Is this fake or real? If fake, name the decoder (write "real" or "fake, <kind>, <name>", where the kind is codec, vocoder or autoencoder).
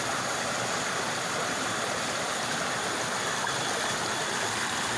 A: real